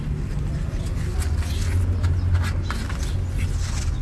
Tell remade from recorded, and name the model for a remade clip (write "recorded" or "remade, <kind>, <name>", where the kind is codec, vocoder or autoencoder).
recorded